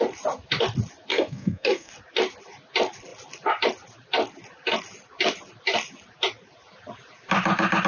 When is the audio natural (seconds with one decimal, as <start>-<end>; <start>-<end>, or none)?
0.0-1.1; 1.9-7.9